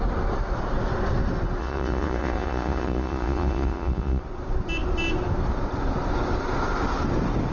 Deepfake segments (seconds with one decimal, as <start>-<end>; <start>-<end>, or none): 1.6-4.2